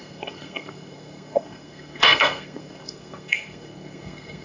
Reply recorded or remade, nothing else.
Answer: remade